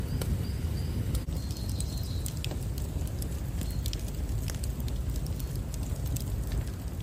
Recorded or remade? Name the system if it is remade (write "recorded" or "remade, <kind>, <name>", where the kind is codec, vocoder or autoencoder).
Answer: recorded